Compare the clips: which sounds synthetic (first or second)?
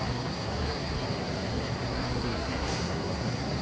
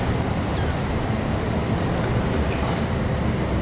first